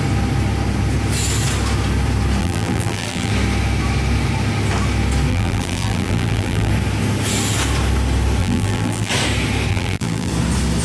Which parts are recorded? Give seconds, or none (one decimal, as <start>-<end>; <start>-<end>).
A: 0.0-2.4; 3.3-5.3; 6.7-8.4; 9.1-9.7; 10.3-10.8